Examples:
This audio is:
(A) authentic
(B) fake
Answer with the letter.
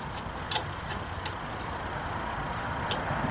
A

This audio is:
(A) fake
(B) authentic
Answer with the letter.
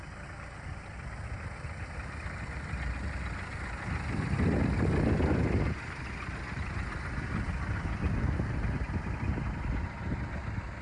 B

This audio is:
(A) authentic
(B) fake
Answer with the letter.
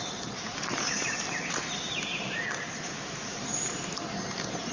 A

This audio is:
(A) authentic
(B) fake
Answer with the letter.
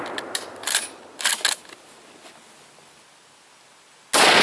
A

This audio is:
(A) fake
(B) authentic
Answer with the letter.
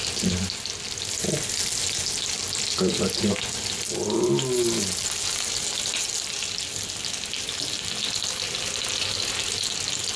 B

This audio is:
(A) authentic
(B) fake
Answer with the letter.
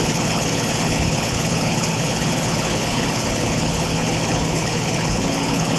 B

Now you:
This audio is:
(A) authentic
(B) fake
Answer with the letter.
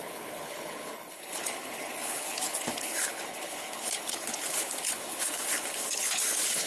B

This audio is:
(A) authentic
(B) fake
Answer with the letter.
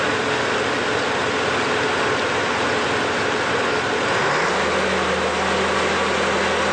A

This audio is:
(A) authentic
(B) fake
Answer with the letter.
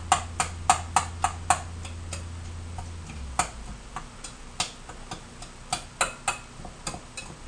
A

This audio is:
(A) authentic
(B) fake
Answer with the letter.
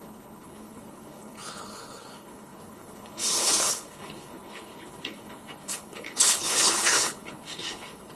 B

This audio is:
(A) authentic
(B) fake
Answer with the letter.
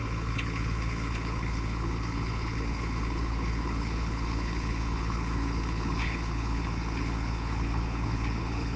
B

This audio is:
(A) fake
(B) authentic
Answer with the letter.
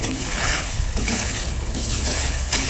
A